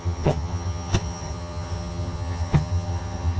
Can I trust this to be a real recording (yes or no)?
no